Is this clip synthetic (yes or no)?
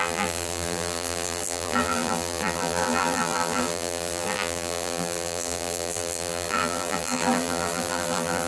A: yes